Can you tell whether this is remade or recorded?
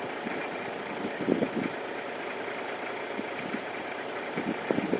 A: remade